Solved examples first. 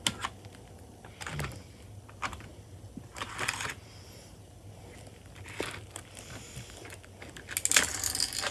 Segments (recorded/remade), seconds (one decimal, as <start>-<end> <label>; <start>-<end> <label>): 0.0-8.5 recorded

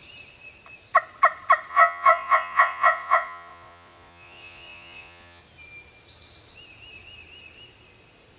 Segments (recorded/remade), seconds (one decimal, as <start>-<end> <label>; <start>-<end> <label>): 0.0-1.7 recorded; 1.7-5.4 remade; 5.4-8.4 recorded

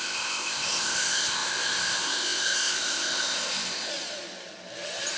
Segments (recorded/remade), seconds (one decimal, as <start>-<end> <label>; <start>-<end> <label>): 0.0-3.9 remade; 3.9-5.2 recorded